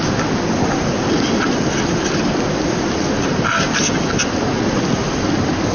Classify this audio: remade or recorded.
recorded